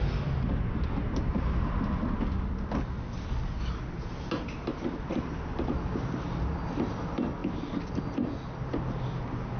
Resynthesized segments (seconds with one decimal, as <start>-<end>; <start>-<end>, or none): none